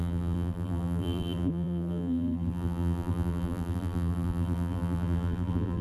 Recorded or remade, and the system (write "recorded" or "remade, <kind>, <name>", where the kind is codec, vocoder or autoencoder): remade, vocoder, BigVGAN v2